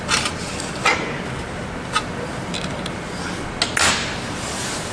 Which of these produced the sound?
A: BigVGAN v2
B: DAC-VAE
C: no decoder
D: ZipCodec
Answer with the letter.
C